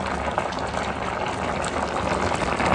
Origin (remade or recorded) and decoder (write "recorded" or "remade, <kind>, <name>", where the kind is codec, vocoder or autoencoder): recorded